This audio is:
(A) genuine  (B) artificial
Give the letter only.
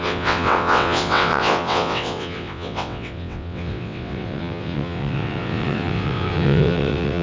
B